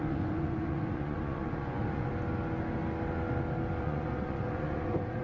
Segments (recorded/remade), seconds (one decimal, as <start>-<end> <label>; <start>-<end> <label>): 0.0-2.1 remade; 2.1-3.8 recorded; 3.8-5.2 remade